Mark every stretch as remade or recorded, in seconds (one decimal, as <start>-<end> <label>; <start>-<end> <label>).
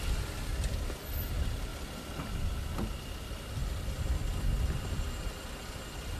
0.0-6.2 recorded